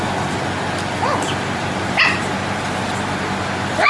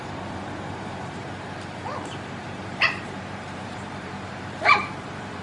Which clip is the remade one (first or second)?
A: second